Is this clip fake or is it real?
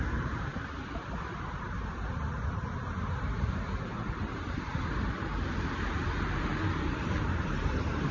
fake